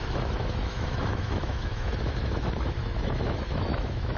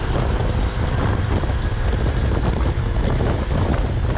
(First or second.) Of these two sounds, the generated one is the first